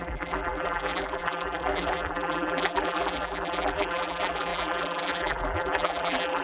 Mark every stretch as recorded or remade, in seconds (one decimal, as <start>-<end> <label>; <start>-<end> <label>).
0.0-6.4 remade

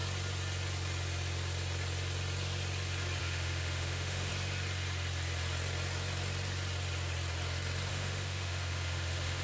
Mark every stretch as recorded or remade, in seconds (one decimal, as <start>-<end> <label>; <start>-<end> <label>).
0.0-3.2 recorded; 3.2-4.3 remade; 4.3-7.9 recorded; 7.9-9.4 remade

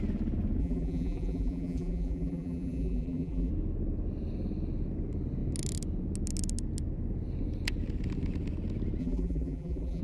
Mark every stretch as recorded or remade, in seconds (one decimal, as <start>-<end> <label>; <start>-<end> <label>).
0.0-0.6 recorded; 0.6-3.5 remade; 3.5-9.0 recorded; 9.0-10.0 remade